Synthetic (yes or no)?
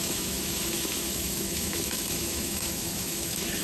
yes